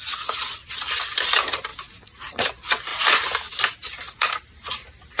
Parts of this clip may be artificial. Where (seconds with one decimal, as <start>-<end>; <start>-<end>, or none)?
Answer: 1.7-2.5